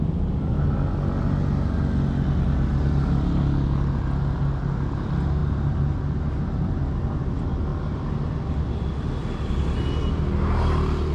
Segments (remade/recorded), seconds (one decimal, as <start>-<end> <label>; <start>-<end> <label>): 0.0-11.1 recorded